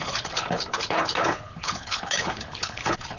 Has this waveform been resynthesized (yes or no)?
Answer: yes